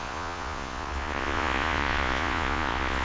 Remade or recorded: remade